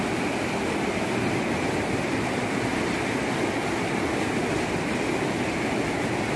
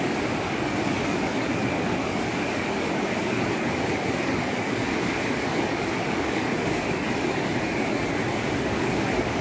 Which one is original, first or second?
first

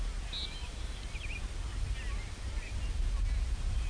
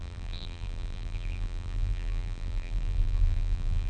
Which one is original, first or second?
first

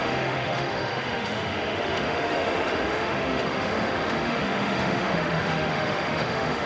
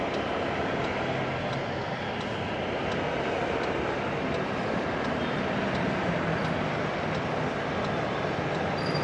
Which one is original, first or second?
second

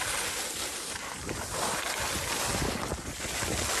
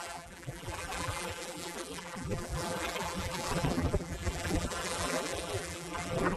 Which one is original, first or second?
first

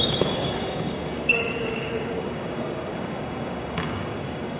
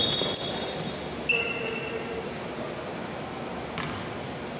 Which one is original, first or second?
second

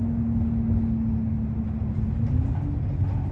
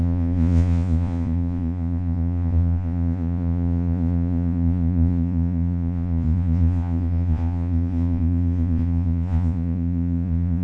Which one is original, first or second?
first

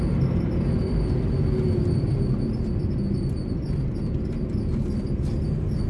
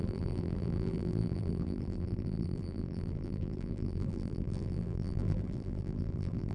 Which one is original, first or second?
first